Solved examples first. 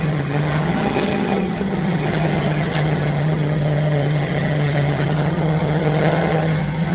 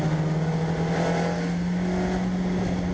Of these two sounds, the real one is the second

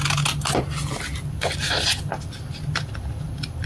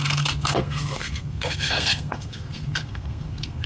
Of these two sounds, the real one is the first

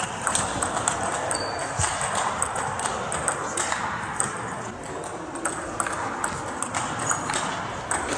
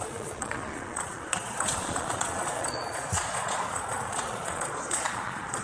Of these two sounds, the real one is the first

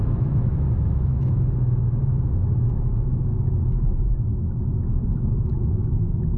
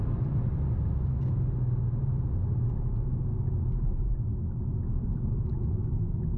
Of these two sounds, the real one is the second